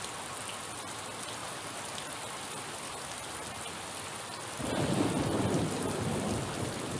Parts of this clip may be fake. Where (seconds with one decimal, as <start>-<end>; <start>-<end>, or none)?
none